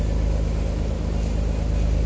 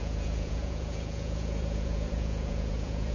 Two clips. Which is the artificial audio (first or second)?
second